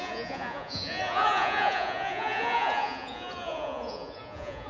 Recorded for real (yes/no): no